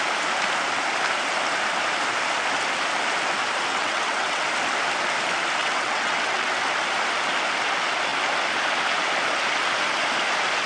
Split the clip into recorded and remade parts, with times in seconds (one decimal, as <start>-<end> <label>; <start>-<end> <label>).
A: 0.0-3.7 recorded; 3.7-4.4 remade; 4.4-5.6 recorded; 5.6-6.6 remade; 6.6-10.7 recorded